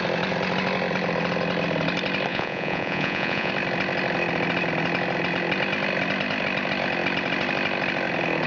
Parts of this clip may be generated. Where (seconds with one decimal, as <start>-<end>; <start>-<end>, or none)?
2.3-3.5